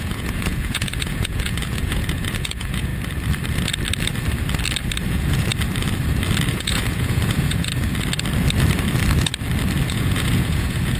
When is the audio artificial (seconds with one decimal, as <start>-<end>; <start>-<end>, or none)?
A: 0.0-2.9; 5.1-5.5; 6.5-7.7; 9.9-11.0